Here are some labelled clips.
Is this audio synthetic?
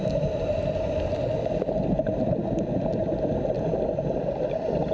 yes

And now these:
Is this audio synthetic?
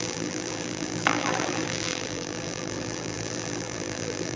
yes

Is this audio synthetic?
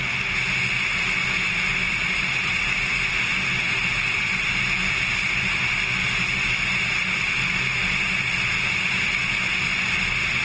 no